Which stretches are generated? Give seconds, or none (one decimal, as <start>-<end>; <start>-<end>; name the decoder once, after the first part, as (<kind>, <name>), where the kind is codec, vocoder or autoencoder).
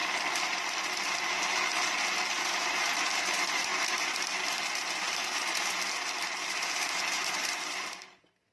none